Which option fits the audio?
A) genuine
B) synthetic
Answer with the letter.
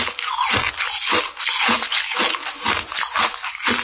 A